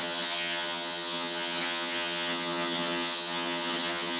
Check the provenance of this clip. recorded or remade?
remade